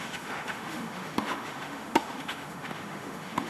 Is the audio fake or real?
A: fake